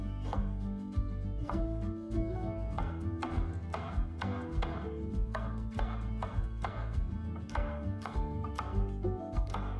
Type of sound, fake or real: fake